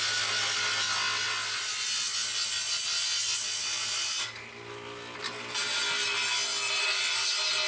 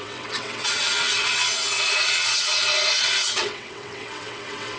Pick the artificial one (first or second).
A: second